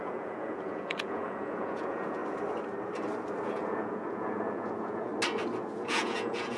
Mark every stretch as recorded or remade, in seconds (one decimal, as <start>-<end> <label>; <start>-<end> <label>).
0.0-2.2 remade; 2.2-3.5 recorded; 3.5-5.1 remade; 5.1-5.7 recorded; 5.7-6.6 remade